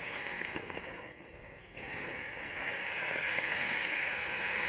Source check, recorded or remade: remade